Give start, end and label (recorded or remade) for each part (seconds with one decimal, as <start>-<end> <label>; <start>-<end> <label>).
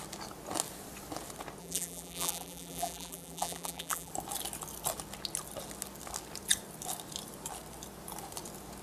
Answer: 0.0-1.6 recorded; 1.6-4.1 remade; 4.1-8.8 recorded